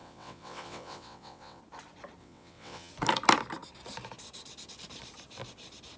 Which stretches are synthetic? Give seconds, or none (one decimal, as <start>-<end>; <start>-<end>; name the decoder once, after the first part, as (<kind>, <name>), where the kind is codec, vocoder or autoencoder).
0.0-1.6 (vocoder, WaveNeXt); 2.2-2.9